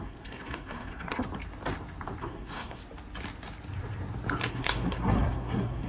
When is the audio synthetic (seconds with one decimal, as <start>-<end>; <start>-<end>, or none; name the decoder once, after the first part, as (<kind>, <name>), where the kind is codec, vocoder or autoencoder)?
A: 0.0-1.3 (codec, SNAC); 2.2-2.8; 4.5-5.9